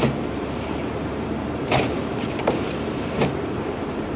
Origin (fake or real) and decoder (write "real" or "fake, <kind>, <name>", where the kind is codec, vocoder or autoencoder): fake, vocoder, BigVGAN v2